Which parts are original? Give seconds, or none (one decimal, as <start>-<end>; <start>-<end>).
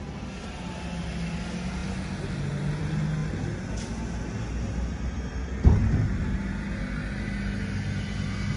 0.0-8.6